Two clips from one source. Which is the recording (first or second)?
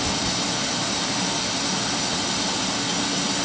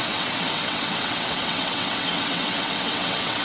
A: first